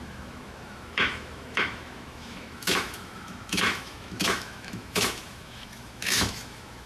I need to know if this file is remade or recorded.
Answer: remade